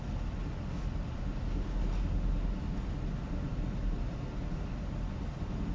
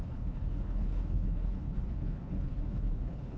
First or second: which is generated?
second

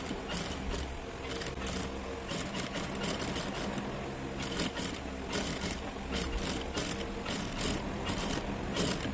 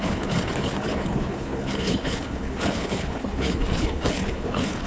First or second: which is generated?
second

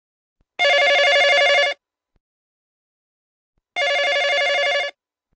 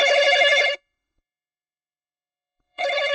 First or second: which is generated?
second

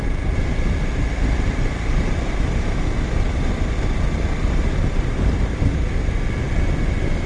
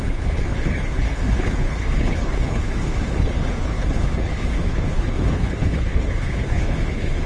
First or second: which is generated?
second